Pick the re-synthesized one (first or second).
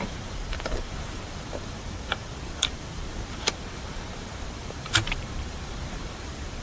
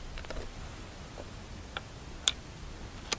first